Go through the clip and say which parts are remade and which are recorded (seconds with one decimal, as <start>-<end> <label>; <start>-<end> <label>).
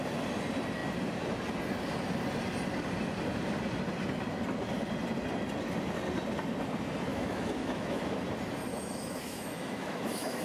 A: 0.0-7.1 recorded; 7.1-8.2 remade; 8.2-8.7 recorded; 8.7-10.4 remade